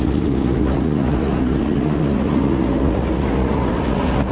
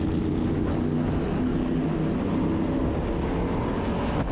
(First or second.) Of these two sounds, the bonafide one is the second